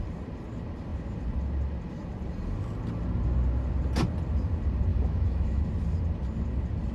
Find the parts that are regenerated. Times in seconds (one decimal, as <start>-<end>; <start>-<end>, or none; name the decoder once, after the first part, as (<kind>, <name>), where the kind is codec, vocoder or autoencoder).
4.9-5.6 (autoencoder, DAC-VAE)